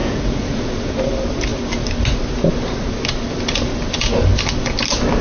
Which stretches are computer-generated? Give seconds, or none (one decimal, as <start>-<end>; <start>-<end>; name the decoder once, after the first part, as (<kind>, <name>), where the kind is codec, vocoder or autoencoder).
0.0-1.0 (vocoder, Vocos)